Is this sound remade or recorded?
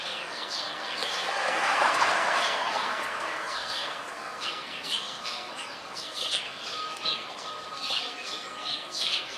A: remade